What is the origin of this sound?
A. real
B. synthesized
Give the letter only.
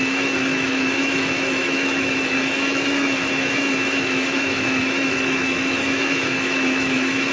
B